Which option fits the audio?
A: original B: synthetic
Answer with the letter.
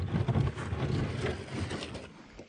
A